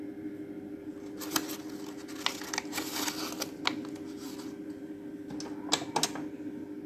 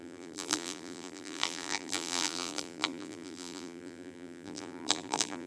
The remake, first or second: second